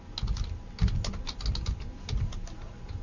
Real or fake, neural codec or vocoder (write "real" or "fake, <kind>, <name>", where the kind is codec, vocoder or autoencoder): real